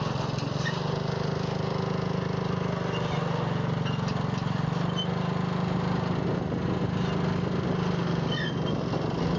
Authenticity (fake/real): real